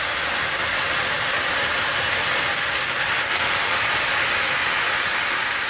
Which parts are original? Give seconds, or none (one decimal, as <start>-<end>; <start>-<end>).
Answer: 0.0-2.5; 3.4-5.7